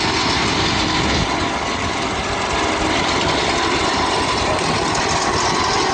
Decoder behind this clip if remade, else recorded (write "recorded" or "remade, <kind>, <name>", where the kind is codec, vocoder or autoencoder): recorded